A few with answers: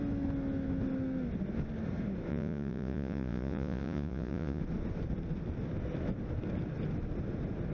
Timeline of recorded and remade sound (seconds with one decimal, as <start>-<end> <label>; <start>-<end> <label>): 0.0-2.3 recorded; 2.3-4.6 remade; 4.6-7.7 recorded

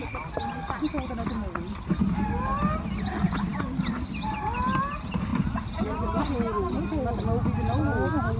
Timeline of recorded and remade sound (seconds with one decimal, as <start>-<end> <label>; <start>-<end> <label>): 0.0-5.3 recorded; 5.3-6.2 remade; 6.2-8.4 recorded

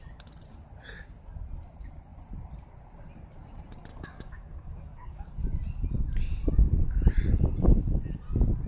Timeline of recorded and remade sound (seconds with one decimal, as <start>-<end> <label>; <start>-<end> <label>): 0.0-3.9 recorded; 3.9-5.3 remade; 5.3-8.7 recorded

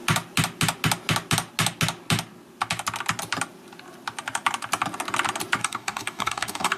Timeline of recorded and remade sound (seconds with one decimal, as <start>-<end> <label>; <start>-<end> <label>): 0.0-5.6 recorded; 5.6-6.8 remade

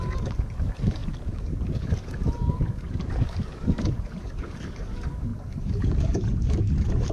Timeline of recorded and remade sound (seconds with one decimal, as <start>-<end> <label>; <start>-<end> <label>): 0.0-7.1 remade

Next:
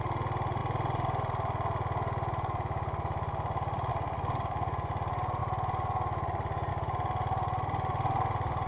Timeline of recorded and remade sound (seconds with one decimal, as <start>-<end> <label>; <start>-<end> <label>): 0.0-8.7 recorded